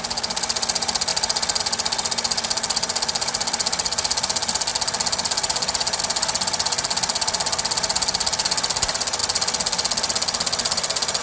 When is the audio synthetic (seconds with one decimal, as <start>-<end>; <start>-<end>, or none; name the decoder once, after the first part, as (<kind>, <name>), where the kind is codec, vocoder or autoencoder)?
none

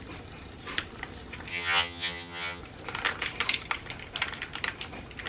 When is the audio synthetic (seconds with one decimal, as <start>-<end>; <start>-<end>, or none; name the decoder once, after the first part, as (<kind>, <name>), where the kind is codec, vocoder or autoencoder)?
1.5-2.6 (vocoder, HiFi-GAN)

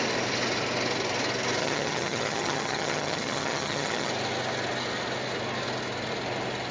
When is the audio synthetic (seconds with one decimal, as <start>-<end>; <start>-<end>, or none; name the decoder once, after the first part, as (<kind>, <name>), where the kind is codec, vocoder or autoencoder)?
1.6-4.1 (vocoder, HiFi-GAN)